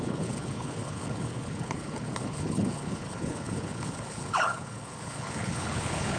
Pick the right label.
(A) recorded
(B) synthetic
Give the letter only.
B